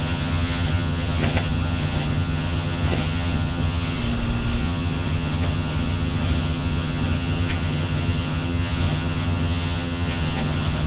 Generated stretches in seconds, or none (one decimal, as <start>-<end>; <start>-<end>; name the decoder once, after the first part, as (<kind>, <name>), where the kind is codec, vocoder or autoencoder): 0.0-4.0 (vocoder, HiFi-GAN); 4.6-10.9